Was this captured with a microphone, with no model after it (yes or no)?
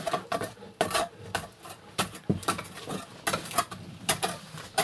yes